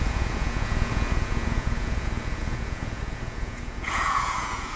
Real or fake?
fake